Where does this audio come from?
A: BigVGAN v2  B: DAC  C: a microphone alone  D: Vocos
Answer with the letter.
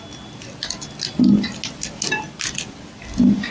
C